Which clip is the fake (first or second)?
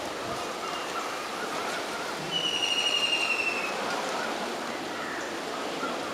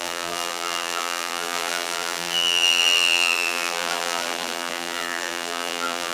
second